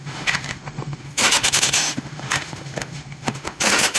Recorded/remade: remade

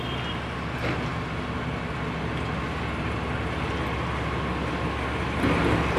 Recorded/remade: recorded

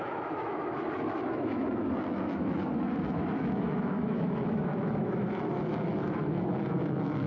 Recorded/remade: remade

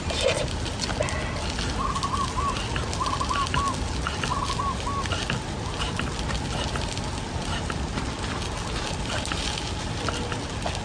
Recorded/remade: recorded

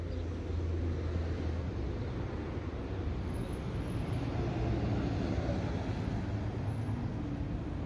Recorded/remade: recorded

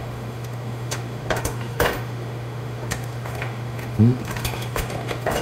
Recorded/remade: remade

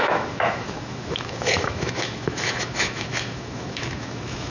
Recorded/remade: remade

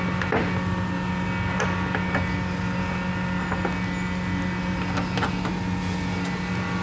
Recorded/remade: recorded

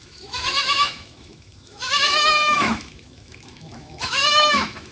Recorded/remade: remade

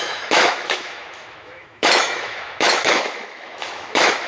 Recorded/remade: remade